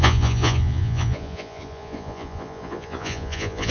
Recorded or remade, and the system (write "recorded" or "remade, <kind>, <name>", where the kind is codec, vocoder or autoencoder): remade, vocoder, Vocos